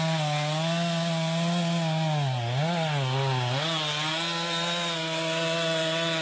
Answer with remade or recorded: recorded